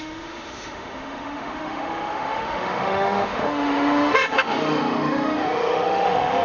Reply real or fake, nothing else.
fake